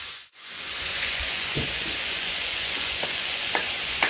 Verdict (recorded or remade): remade